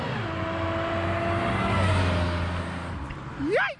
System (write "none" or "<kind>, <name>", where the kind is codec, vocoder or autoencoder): none